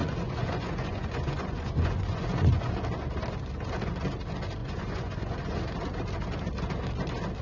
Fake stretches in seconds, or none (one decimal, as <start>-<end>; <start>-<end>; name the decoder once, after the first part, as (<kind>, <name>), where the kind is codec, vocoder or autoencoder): 0.0-2.7 (vocoder, Vocos); 4.6-5.6